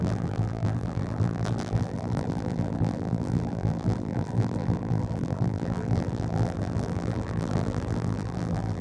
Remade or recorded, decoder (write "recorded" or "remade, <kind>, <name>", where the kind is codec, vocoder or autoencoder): remade, vocoder, BigVGAN v2